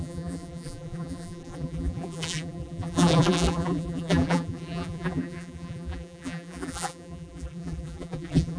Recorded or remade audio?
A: remade